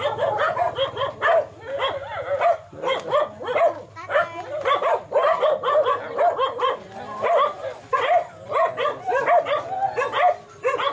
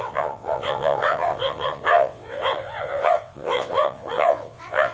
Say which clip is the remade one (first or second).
second